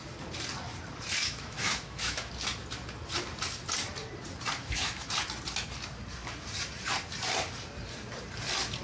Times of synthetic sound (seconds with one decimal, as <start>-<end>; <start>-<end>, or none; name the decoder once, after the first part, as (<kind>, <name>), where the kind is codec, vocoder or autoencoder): 1.2-2.3 (autoencoder, DAC-VAE); 4.6-5.1